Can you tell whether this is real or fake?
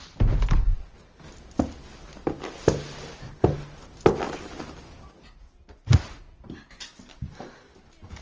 real